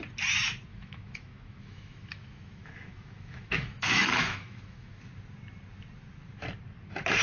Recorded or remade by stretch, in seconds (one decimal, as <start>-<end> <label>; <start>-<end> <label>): 0.0-0.7 recorded; 0.7-5.0 remade; 5.0-7.2 recorded